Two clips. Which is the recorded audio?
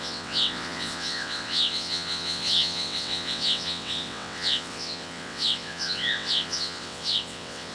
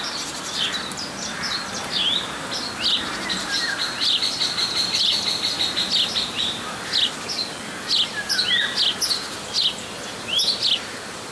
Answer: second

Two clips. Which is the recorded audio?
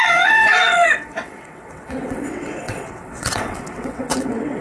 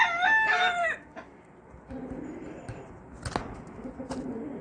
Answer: second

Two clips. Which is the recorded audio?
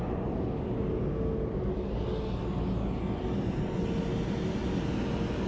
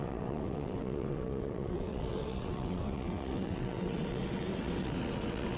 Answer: first